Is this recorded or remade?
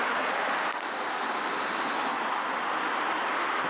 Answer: recorded